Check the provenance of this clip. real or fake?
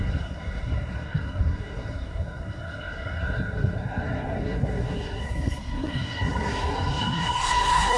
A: fake